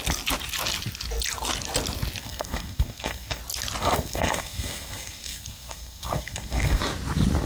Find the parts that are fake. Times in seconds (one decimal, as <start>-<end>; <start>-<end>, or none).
2.2-3.4; 3.8-6.8

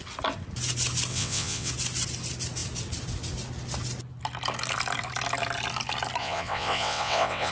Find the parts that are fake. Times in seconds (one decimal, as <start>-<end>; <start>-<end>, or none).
1.1-1.7; 6.2-7.5